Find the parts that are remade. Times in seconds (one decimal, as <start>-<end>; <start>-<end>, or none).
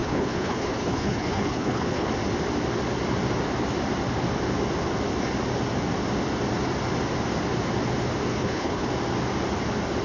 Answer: 0.0-2.1; 8.3-8.9